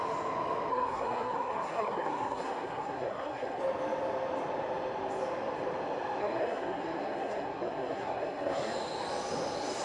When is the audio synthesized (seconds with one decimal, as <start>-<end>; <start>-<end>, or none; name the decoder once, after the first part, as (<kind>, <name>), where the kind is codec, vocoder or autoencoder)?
0.7-3.6 (codec, SNAC); 6.2-8.7